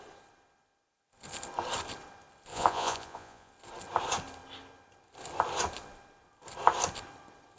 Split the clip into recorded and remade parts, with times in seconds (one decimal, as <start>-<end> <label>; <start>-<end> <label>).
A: 0.0-2.5 recorded; 2.5-3.5 remade; 3.5-7.6 recorded